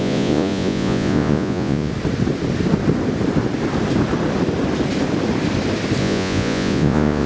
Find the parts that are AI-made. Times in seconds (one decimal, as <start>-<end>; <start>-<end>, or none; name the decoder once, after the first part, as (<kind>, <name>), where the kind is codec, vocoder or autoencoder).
0.0-1.9 (vocoder, Vocos); 6.0-7.3